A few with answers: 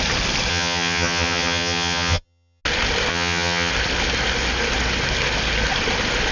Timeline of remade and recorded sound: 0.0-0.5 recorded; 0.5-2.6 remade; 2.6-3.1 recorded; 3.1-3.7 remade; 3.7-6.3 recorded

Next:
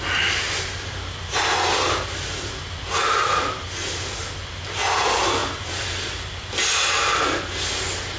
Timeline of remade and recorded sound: 0.0-8.2 recorded

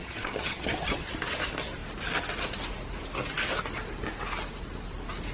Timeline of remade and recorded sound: 0.0-1.1 remade; 1.1-5.3 recorded

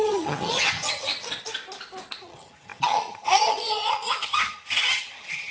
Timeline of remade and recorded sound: 0.0-1.1 remade; 1.1-2.2 recorded; 2.2-5.5 remade

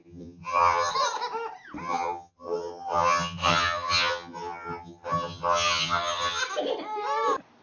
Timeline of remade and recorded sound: 0.0-0.9 remade; 0.9-1.8 recorded; 1.8-6.4 remade; 6.4-7.6 recorded

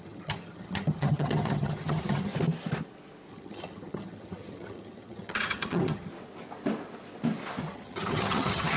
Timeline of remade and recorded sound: 0.0-2.3 remade; 2.3-3.3 recorded; 3.3-6.1 remade; 6.1-7.6 recorded; 7.6-8.8 remade

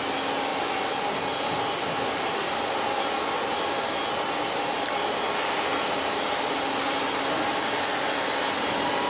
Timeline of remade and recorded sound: 0.0-9.1 recorded

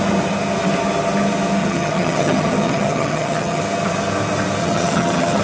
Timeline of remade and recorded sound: 0.0-1.6 recorded; 1.6-3.6 remade; 3.6-4.6 recorded; 4.6-5.4 remade